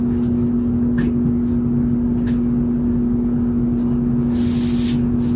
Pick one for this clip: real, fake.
real